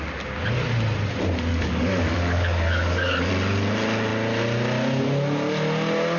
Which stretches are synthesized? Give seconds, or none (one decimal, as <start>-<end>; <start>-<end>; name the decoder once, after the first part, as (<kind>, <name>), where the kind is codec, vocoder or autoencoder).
1.5-3.3 (codec, DAC)